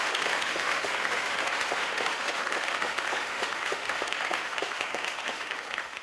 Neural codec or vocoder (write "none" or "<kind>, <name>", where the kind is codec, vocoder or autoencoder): autoencoder, DAC-VAE